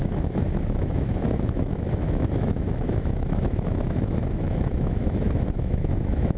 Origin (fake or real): fake